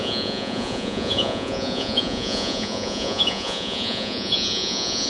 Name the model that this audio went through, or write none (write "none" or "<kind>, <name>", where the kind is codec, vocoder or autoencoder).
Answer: vocoder, Vocos